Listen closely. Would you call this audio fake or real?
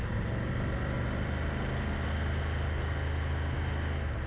real